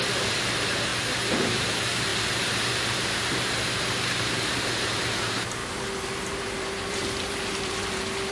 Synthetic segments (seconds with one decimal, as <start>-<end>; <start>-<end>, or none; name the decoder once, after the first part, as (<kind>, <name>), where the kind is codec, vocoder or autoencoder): 0.0-5.6 (vocoder, BigVGAN v2); 6.3-8.3